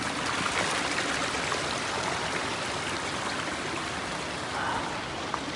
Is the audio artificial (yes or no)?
no